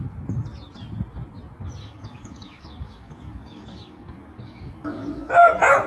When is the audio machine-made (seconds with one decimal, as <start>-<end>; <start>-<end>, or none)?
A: 1.8-5.3